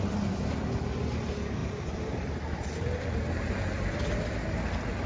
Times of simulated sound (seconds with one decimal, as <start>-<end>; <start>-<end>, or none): 1.6-4.2

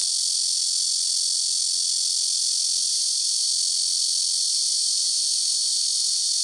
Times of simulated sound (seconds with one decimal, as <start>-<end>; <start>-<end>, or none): 2.9-3.5; 4.4-6.4

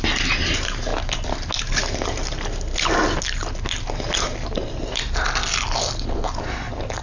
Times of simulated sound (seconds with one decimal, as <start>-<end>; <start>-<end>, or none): none

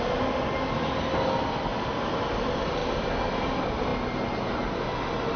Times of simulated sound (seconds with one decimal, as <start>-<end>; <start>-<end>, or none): 1.7-2.3

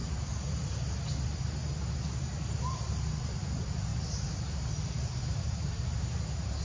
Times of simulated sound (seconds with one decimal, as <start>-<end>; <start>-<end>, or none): 0.0-6.6

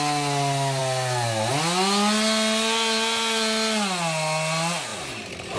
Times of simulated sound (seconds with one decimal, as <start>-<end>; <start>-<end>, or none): 4.9-5.6

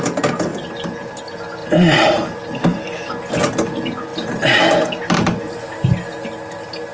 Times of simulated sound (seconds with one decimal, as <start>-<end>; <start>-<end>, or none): 1.6-3.3